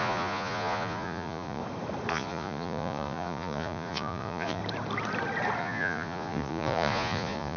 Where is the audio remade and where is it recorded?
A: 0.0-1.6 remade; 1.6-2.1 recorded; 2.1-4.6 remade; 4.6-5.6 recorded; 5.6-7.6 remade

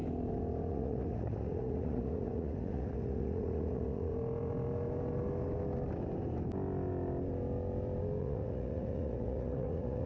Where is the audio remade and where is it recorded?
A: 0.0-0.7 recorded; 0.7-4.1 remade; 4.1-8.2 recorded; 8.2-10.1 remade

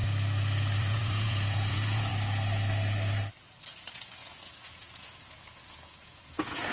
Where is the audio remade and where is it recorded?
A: 0.0-0.8 recorded; 0.8-2.1 remade; 2.1-3.7 recorded; 3.7-6.7 remade

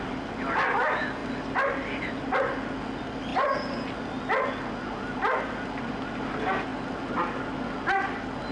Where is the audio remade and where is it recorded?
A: 0.0-8.5 recorded

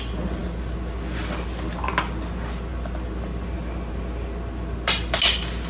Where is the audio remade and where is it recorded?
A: 0.0-5.7 recorded

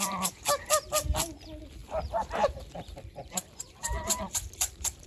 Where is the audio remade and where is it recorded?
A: 0.0-1.8 recorded; 1.8-5.1 remade